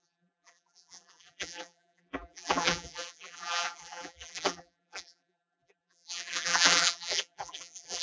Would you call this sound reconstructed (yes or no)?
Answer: yes